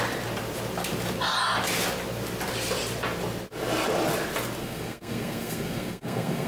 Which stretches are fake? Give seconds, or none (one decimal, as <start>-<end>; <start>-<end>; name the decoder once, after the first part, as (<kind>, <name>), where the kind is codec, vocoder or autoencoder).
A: 4.6-6.5 (codec, SNAC)